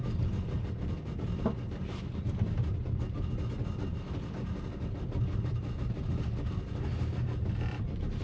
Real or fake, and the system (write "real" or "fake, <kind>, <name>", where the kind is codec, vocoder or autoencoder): real